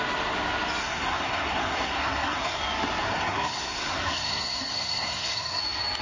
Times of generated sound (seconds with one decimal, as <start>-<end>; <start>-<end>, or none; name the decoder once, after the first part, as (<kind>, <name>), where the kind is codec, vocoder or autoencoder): 0.8-2.6 (codec, SNAC); 3.0-5.6